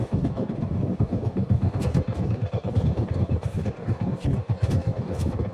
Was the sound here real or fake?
fake